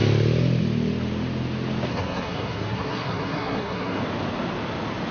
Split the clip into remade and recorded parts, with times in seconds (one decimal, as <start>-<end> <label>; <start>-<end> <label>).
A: 0.0-1.9 recorded; 1.9-4.0 remade; 4.0-5.1 recorded